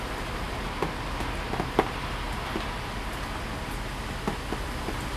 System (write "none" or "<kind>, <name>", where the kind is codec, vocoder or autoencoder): none